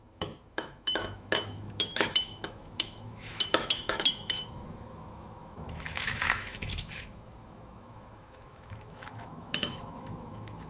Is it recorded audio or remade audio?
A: remade